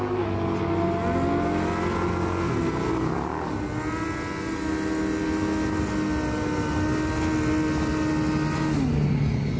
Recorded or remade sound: recorded